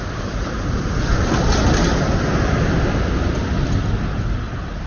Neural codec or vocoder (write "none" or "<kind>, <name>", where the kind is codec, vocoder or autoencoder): none